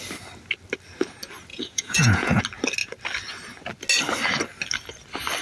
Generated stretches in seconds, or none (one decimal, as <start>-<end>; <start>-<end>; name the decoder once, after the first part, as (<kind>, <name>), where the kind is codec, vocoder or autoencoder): 1.5-2.4 (vocoder, Vocos)